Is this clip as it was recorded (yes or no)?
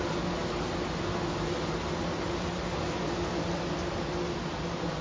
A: yes